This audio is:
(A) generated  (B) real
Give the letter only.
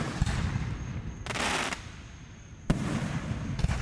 B